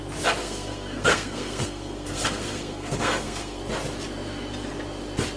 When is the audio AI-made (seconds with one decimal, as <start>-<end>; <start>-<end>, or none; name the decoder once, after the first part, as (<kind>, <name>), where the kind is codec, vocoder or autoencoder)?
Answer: 0.4-3.6 (codec, SNAC)